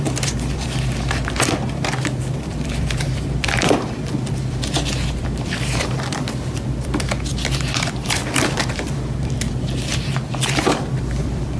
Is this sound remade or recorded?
remade